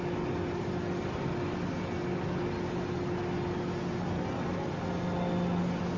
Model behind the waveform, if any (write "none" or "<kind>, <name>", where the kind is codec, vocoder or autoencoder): none